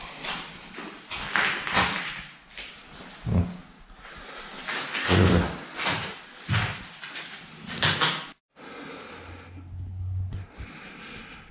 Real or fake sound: real